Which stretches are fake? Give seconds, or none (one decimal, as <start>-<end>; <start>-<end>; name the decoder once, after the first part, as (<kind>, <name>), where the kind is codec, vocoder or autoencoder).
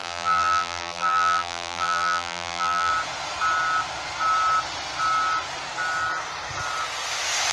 0.0-2.9 (vocoder, BigVGAN v2)